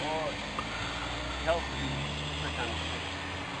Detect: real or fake real